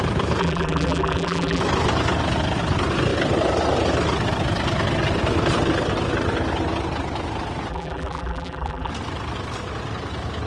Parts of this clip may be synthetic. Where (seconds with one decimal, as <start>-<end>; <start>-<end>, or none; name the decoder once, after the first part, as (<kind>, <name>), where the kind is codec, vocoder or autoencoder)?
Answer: 0.4-1.6 (vocoder, BigVGAN v2); 7.7-8.9